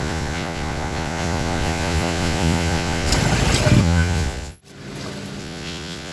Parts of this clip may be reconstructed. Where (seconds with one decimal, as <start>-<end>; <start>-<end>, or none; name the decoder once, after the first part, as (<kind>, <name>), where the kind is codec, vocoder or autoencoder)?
0.0-3.1 (vocoder, Vocos); 3.8-4.6; 5.4-6.1